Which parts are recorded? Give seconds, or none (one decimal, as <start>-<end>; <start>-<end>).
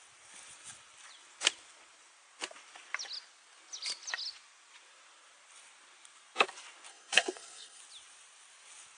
0.0-6.9; 7.8-9.0